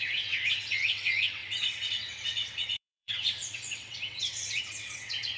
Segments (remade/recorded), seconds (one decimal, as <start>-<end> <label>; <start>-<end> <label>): 0.0-5.4 remade